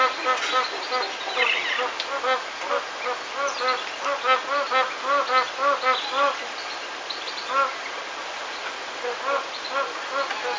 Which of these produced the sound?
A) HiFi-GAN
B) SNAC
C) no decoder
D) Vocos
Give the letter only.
C